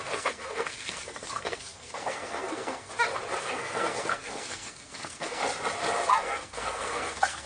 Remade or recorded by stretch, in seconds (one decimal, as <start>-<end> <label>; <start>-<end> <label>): 0.0-2.9 remade; 2.9-3.4 recorded; 3.4-5.4 remade; 5.4-6.1 recorded; 6.1-7.5 remade